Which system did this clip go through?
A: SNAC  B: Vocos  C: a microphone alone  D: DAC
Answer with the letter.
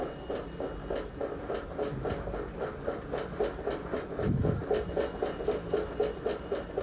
C